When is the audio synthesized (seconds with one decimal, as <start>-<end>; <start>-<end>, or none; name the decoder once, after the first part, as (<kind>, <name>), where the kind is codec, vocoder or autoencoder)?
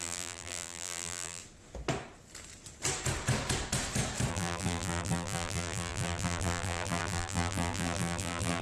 0.0-1.4 (vocoder, BigVGAN v2); 4.3-8.6